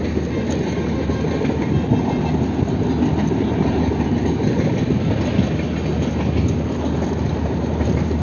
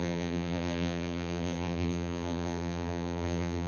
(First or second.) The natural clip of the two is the first